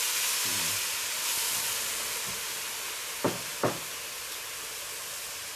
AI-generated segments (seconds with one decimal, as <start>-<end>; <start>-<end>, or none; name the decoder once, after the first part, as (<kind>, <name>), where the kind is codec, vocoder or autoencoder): none